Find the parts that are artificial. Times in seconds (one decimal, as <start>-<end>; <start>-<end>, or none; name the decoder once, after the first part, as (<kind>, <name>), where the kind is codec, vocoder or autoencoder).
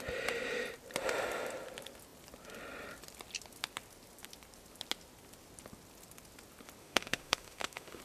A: 6.8-8.0 (autoencoder, DAC-VAE)